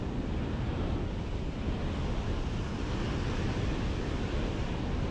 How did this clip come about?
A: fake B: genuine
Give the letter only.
B